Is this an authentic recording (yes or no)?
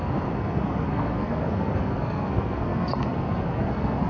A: no